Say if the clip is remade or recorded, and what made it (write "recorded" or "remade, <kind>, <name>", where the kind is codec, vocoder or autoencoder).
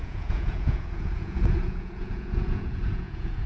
remade, vocoder, Vocos